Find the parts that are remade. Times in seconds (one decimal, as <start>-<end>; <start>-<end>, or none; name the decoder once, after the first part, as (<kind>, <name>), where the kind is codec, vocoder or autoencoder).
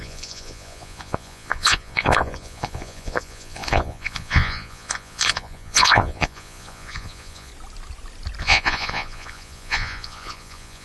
0.0-7.5 (vocoder, Vocos); 8.4-10.8